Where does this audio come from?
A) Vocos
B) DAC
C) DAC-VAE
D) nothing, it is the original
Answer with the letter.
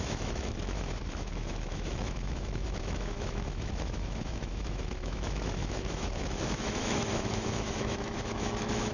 C